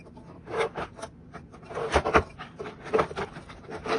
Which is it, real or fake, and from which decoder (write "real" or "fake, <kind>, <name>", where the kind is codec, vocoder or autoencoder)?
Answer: fake, vocoder, BigVGAN v2